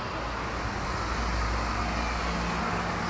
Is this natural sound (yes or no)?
yes